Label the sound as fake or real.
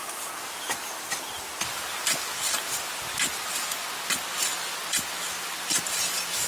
real